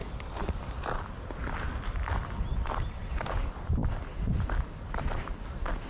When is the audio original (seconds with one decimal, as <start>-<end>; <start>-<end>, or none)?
0.0-5.9